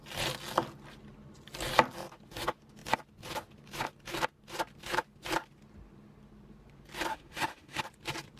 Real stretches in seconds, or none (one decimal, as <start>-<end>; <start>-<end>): 0.0-7.1; 7.8-8.4